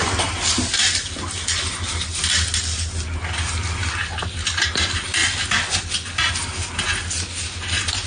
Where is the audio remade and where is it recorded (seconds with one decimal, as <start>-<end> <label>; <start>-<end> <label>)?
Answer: 0.0-8.1 recorded